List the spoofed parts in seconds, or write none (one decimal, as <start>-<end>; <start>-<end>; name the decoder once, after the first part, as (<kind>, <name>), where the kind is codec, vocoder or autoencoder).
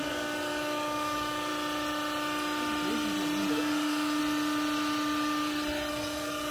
0.0-1.5 (codec, DAC); 3.5-4.2; 5.9-6.5